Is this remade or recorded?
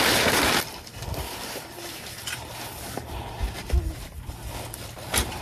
remade